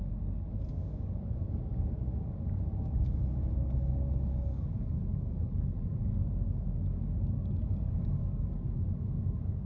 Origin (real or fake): fake